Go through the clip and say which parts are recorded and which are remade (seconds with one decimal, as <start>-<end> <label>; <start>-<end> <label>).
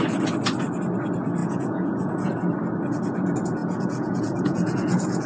0.0-1.4 recorded; 1.4-2.3 remade; 2.3-3.6 recorded; 3.6-5.3 remade